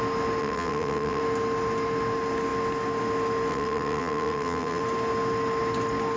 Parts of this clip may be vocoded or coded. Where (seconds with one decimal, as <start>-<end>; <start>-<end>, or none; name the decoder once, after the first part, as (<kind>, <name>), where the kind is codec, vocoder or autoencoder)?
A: 0.4-1.2 (vocoder, WaveNeXt); 3.5-4.8